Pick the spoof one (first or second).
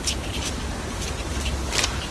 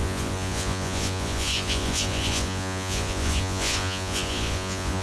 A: second